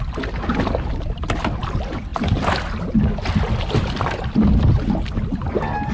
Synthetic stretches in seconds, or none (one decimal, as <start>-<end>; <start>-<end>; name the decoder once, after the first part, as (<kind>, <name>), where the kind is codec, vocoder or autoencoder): none